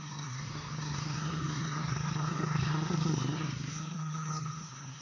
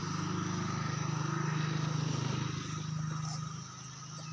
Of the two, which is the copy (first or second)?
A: first